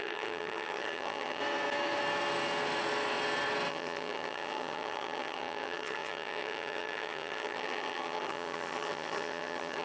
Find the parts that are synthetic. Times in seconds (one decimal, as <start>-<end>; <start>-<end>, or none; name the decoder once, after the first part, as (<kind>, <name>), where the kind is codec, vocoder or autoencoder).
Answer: 0.0-1.4 (vocoder, HiFi-GAN); 3.7-9.8